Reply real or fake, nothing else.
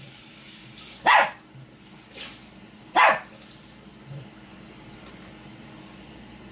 real